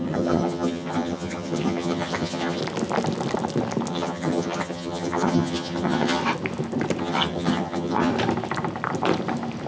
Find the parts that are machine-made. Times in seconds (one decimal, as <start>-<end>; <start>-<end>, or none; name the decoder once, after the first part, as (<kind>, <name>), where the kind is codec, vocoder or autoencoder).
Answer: 0.0-2.6 (vocoder, HiFi-GAN); 3.9-6.2; 7.0-8.1